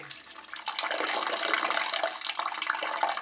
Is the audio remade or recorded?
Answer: recorded